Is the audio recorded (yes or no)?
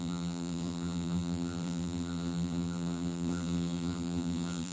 no